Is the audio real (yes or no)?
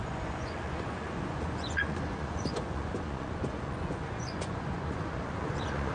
no